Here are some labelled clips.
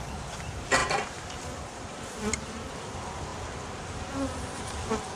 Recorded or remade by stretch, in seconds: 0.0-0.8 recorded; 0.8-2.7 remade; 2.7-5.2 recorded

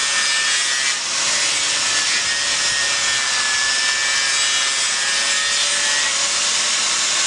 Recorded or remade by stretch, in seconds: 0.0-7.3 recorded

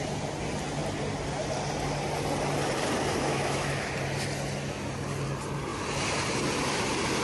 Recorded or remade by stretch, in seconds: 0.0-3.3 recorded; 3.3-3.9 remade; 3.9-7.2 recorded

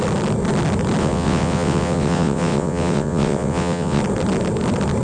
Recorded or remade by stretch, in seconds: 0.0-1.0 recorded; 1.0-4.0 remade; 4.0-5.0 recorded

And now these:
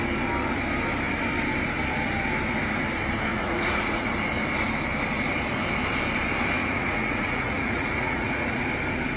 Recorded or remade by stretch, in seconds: 0.0-3.3 recorded; 3.3-4.1 remade; 4.1-6.6 recorded; 6.6-8.7 remade; 8.7-9.2 recorded

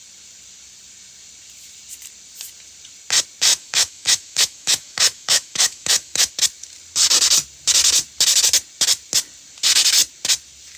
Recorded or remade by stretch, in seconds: 0.0-3.5 recorded; 3.5-6.3 remade; 6.3-10.8 recorded